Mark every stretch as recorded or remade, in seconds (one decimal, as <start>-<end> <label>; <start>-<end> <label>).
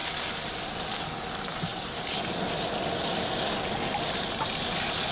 0.0-5.1 recorded